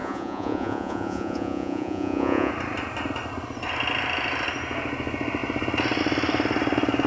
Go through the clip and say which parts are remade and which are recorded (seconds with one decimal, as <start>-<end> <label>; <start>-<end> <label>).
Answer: 0.0-2.5 remade; 2.5-7.1 recorded